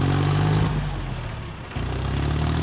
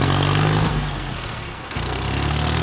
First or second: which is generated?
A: second